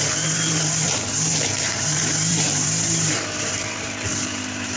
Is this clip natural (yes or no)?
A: no